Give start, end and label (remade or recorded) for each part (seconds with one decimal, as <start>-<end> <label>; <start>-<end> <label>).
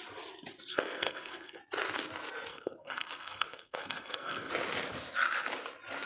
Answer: 0.0-0.7 recorded; 0.7-1.6 remade; 1.6-2.5 recorded; 2.5-4.5 remade; 4.5-6.1 recorded